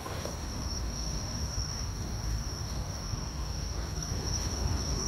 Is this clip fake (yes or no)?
yes